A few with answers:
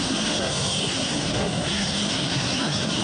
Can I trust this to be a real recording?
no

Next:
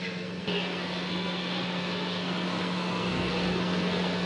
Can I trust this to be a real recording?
no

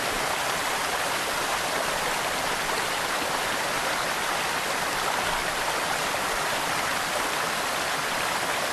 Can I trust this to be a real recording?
yes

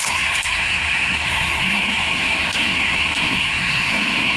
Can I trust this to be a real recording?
no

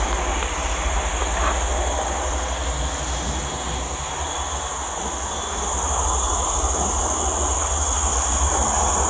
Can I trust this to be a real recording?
yes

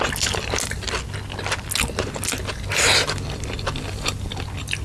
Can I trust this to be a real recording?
yes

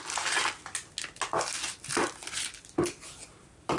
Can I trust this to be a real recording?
yes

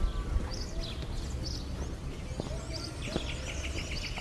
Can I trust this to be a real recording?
yes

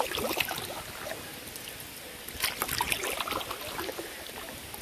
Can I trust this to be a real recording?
yes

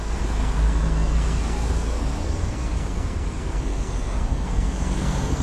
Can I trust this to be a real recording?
no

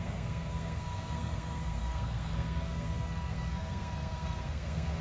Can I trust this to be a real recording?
no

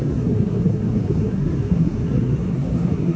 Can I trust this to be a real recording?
no